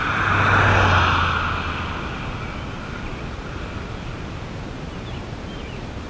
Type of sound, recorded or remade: recorded